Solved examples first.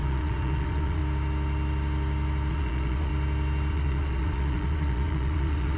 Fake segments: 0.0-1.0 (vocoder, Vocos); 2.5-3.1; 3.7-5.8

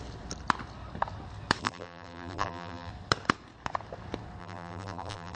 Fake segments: 1.6-2.9 (vocoder, BigVGAN v2); 4.4-5.4